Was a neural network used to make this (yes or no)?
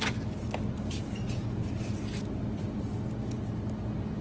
no